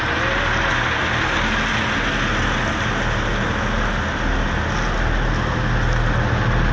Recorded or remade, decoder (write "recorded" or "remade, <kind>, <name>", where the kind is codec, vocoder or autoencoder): recorded